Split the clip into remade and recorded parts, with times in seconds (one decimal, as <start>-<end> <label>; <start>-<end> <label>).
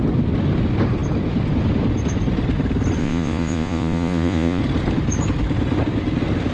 0.0-3.0 recorded; 3.0-4.6 remade; 4.6-6.5 recorded